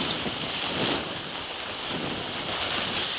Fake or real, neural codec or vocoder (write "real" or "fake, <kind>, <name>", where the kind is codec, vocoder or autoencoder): real